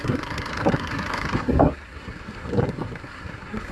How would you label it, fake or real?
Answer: fake